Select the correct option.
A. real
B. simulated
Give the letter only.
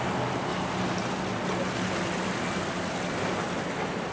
A